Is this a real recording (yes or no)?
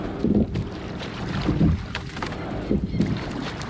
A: no